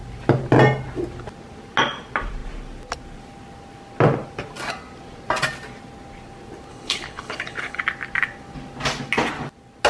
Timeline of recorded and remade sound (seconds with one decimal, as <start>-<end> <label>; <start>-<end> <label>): 0.0-6.7 recorded; 6.7-7.8 remade; 7.8-9.9 recorded